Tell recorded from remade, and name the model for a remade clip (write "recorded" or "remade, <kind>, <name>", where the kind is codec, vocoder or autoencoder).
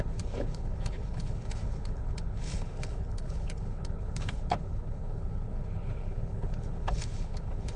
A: remade, codec, HILCodec